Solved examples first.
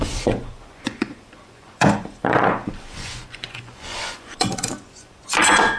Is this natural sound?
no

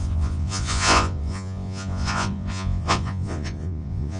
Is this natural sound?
no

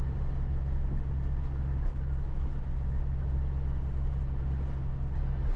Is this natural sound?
yes